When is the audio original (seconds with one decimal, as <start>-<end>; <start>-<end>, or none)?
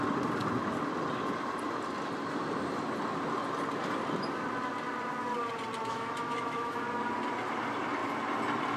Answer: 0.0-5.8; 6.7-8.8